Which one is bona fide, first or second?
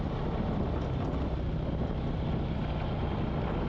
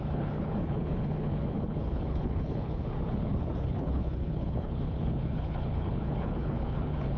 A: first